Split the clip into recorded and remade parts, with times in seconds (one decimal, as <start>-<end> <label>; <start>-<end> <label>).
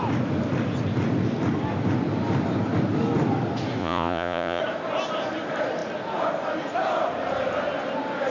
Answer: 0.0-3.8 recorded; 3.8-4.6 remade; 4.6-8.3 recorded